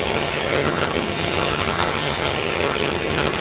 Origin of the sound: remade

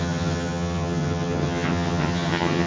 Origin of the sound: remade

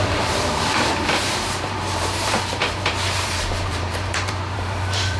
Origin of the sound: remade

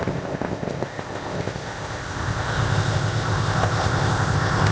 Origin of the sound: remade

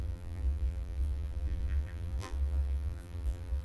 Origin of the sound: remade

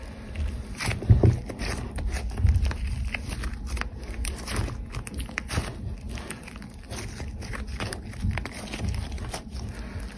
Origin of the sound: recorded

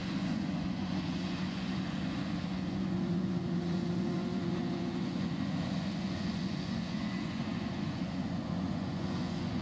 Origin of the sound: remade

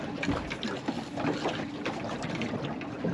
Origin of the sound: recorded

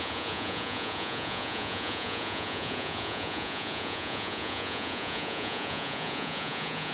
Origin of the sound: remade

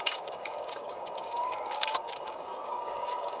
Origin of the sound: remade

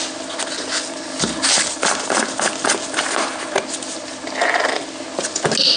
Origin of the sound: recorded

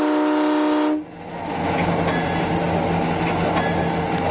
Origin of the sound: recorded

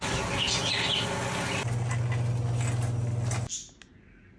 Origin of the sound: recorded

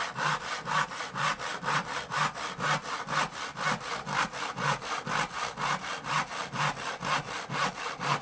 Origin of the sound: recorded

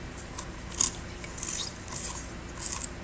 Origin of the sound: recorded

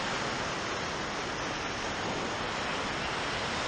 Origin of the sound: recorded